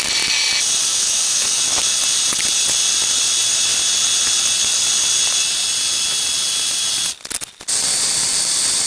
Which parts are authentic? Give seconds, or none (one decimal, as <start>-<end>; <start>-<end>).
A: 0.0-0.9; 1.6-8.9